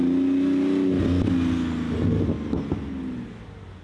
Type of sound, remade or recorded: recorded